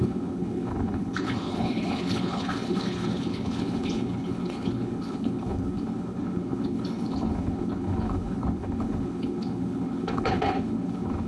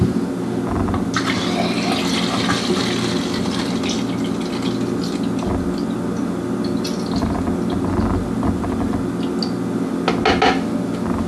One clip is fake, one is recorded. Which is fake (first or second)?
first